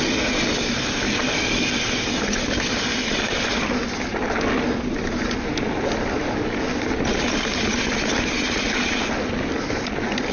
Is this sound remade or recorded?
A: recorded